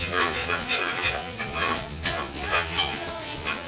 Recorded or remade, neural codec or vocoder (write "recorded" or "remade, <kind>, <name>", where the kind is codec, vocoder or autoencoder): remade, vocoder, Vocos